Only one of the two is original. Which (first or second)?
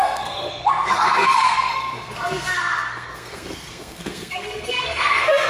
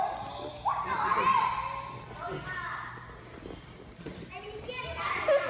second